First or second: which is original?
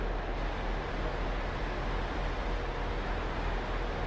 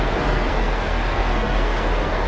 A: first